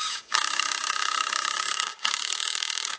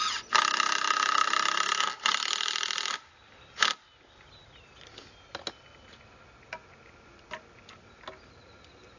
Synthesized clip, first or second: first